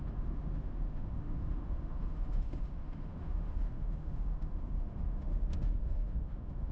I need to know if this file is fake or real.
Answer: fake